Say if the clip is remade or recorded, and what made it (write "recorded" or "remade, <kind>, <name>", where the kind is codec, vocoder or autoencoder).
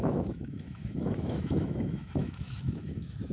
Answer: remade, autoencoder, DAC-VAE